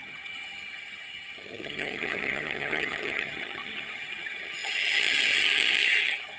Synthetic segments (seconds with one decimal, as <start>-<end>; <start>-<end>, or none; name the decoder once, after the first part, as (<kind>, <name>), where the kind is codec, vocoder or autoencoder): 0.0-6.4 (vocoder, HiFi-GAN)